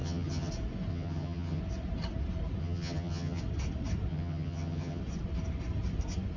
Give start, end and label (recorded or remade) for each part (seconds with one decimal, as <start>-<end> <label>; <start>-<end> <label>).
0.0-0.5 remade; 0.5-0.9 recorded; 0.9-1.6 remade; 1.6-2.6 recorded; 2.6-3.4 remade; 3.4-4.1 recorded; 4.1-5.0 remade; 5.0-6.4 recorded

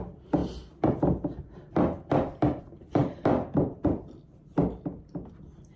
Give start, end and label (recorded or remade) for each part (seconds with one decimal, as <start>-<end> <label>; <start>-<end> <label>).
0.0-5.8 recorded

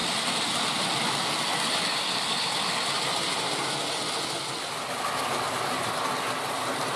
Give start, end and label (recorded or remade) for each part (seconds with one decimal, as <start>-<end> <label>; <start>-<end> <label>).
0.0-0.8 remade; 0.8-7.0 recorded

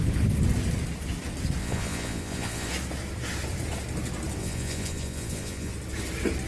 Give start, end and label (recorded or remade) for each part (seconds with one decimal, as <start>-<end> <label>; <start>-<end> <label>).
0.0-1.6 recorded; 1.6-2.7 remade; 2.7-4.4 recorded; 4.4-5.7 remade; 5.7-6.5 recorded

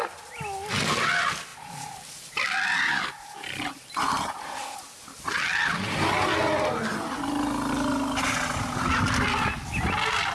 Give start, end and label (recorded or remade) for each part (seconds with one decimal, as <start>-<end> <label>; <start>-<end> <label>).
0.0-10.3 recorded

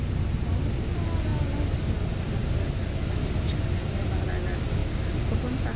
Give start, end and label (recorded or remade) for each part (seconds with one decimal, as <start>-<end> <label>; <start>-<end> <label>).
0.0-5.8 recorded

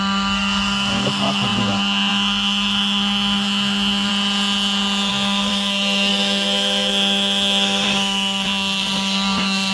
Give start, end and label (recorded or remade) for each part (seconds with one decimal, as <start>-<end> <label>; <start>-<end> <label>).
0.0-4.1 remade; 4.1-5.1 recorded; 5.1-9.7 remade

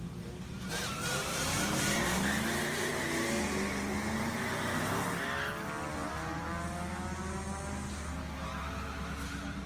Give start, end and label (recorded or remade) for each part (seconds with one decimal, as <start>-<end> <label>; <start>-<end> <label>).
0.0-9.7 recorded